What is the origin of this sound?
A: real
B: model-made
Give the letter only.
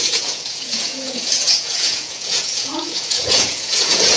B